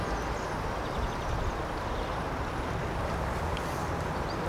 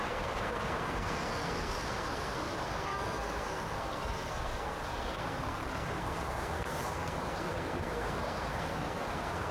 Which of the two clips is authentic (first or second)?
first